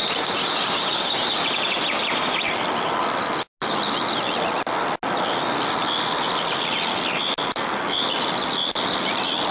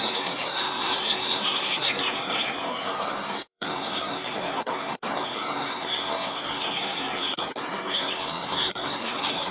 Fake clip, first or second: second